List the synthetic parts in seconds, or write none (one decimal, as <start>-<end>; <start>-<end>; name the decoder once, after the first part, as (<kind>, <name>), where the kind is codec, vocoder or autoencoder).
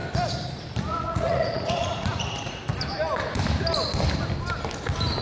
0.9-2.6 (vocoder, Vocos)